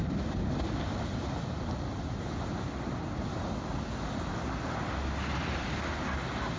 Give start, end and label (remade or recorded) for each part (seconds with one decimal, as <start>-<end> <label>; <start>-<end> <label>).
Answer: 0.0-6.6 recorded